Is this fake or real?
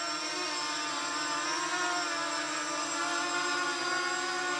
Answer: real